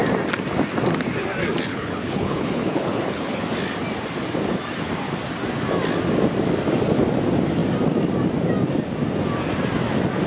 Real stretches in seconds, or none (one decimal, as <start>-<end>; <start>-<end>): 0.0-1.7; 3.4-10.3